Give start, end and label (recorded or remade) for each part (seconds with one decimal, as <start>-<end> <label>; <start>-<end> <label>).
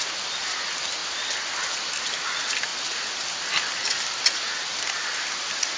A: 0.0-5.8 recorded